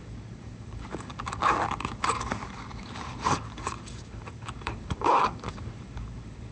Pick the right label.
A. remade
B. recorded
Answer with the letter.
A